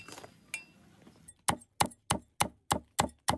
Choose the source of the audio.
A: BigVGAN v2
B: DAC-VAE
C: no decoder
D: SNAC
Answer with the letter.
C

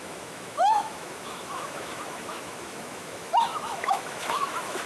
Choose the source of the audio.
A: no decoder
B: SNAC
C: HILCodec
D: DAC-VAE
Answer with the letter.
D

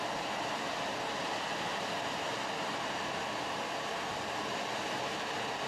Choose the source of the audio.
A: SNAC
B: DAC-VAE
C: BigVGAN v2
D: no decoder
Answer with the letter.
D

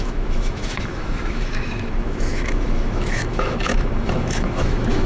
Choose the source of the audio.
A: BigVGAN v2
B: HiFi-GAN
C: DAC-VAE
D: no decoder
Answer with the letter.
C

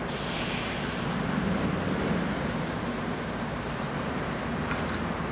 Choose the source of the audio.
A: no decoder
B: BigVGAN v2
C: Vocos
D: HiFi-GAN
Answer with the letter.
B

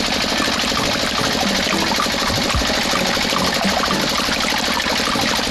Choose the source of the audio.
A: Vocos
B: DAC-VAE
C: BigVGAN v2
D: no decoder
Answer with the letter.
D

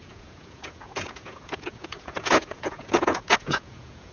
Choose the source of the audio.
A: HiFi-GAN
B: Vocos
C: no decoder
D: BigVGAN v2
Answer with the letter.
B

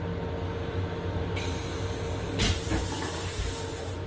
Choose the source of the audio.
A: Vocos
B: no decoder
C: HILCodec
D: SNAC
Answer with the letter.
B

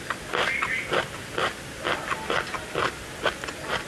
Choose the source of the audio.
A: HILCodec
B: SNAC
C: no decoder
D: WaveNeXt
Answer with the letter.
C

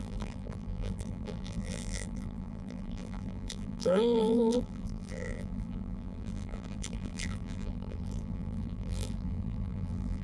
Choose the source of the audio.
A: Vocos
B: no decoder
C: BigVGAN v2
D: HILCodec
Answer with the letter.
C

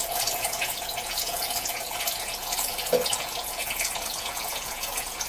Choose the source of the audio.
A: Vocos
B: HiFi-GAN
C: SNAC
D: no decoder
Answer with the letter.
A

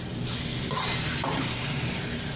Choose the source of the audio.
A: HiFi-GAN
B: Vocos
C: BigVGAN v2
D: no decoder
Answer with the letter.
D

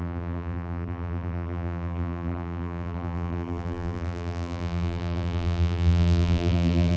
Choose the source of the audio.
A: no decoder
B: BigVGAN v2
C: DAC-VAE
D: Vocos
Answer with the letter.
B